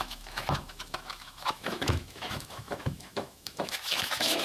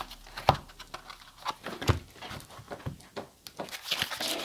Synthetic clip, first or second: first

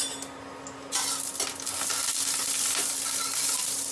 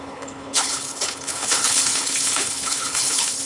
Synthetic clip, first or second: second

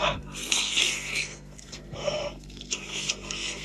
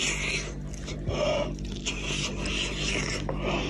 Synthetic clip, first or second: first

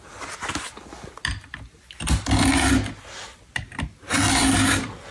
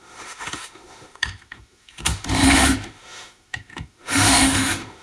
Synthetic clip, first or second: second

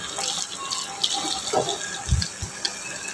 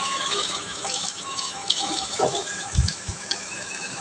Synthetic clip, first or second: second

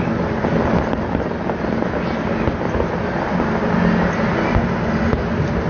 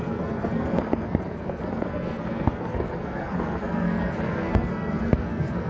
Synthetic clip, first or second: second